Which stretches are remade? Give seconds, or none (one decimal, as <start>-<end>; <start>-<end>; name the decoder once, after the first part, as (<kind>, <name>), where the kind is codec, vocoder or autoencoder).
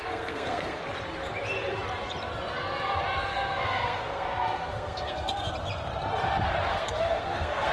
0.0-0.8 (codec, SNAC); 3.3-5.5; 6.7-7.7